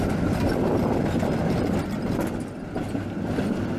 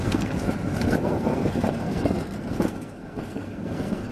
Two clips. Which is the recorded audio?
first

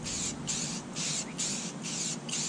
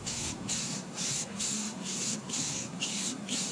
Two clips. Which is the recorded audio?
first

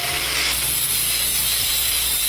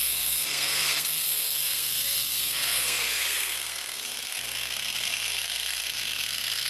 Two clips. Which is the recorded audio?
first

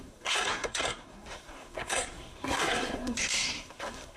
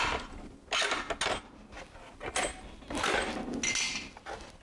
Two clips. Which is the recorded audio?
second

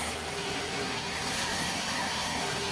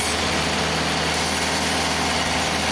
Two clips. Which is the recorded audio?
second